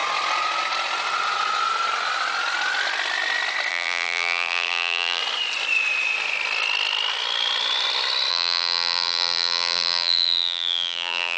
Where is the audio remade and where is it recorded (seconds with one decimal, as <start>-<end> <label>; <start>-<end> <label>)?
0.0-3.7 recorded; 3.7-5.2 remade; 5.2-8.3 recorded; 8.3-11.4 remade